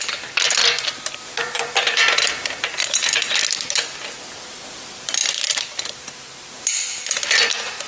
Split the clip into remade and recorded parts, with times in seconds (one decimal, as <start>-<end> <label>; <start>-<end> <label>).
0.0-7.9 recorded